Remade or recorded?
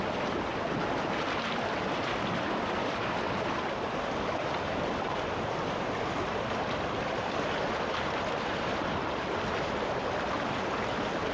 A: recorded